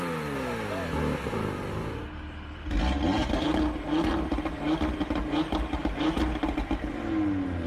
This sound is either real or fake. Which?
real